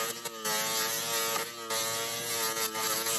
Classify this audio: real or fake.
real